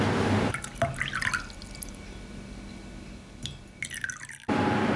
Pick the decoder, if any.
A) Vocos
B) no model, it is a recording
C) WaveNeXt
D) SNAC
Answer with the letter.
B